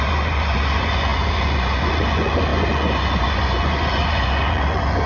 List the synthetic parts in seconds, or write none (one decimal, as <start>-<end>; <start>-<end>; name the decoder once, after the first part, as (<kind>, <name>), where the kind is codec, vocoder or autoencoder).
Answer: 0.0-5.1 (vocoder, Vocos)